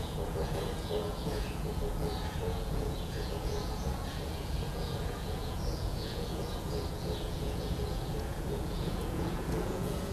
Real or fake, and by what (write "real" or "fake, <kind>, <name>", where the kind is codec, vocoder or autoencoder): fake, vocoder, Vocos